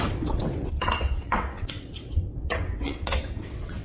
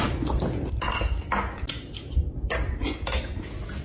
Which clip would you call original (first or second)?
second